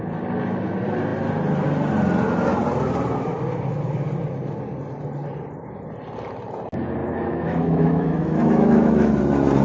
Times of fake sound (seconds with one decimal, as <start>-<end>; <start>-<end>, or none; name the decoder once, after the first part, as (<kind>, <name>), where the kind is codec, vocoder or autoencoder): 7.0-9.2 (autoencoder, DAC-VAE)